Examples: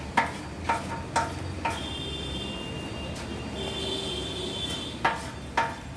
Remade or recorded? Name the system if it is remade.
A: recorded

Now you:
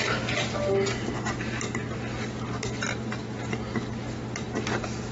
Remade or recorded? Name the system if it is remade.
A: recorded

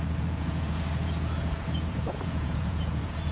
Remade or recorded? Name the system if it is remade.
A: remade, vocoder, Vocos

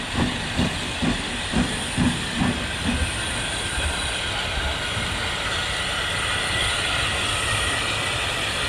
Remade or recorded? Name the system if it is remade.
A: recorded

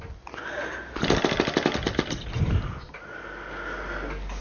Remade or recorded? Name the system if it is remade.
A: recorded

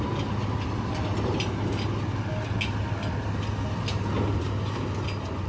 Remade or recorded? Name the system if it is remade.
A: recorded